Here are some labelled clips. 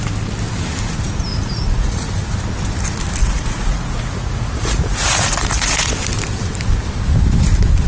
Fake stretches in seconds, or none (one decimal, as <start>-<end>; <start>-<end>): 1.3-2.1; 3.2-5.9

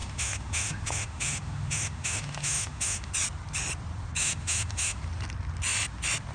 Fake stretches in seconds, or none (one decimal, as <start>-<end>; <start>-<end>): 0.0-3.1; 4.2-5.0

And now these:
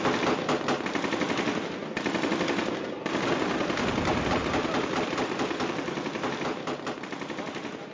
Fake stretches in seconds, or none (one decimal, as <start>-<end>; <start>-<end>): none

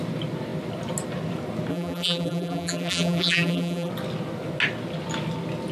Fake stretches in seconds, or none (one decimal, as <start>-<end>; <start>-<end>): 1.7-3.9

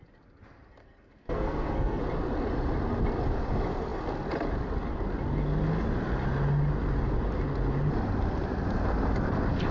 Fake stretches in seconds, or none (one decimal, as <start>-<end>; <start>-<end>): 0.8-2.0

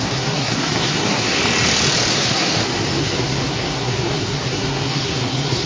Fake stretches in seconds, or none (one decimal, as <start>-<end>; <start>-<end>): 0.0-1.4; 2.1-2.5; 3.0-5.7